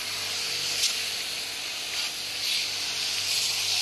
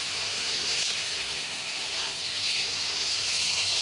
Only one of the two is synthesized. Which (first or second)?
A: second